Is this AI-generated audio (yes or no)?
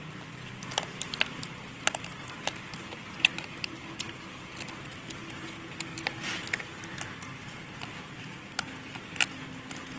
no